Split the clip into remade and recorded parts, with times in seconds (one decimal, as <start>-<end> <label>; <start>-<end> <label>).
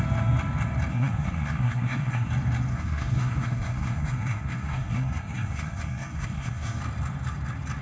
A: 0.0-0.9 recorded; 0.9-2.3 remade; 2.3-2.7 recorded; 2.7-6.8 remade; 6.8-7.8 recorded